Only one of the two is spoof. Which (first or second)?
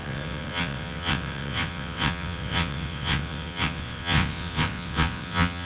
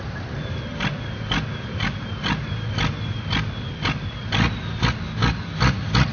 first